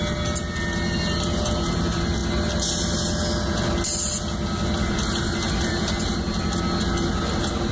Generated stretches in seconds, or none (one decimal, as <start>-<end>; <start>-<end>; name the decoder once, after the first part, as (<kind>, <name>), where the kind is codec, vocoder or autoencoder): none